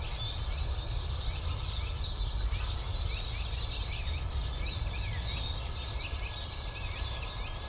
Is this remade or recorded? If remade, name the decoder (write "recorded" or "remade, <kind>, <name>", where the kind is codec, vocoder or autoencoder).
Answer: recorded